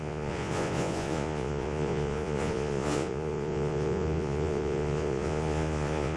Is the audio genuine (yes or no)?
no